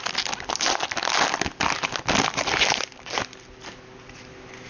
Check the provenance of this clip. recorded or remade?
recorded